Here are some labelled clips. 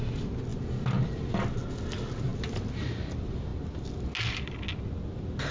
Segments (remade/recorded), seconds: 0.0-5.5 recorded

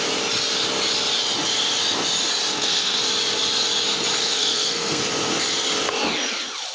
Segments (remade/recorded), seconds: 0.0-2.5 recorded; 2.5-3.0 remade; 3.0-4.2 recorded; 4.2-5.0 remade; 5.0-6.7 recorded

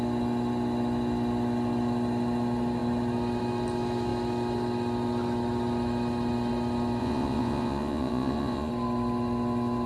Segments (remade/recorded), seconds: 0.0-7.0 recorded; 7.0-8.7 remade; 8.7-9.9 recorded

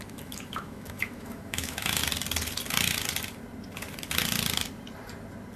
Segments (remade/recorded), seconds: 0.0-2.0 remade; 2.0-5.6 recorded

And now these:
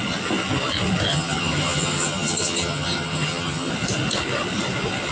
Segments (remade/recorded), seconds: 0.0-1.1 recorded; 1.1-3.7 remade; 3.7-5.1 recorded